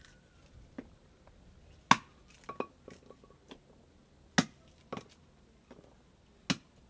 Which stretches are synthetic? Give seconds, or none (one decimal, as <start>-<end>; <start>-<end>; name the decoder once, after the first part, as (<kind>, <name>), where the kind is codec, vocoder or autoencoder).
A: none